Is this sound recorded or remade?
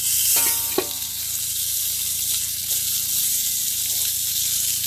recorded